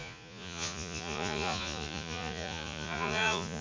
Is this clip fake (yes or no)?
yes